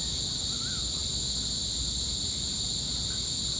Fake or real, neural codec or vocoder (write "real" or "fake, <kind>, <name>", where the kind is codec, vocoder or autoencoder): real